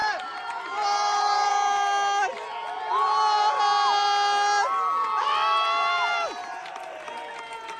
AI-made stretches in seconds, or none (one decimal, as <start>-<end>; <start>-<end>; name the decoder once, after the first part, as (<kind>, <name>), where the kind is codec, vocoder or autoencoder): 0.0-1.5 (vocoder, BigVGAN v2)